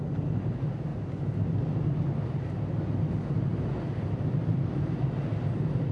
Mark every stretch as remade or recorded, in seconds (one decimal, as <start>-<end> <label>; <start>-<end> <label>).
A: 0.0-0.9 recorded; 0.9-1.9 remade; 1.9-3.5 recorded; 3.5-5.2 remade; 5.2-5.9 recorded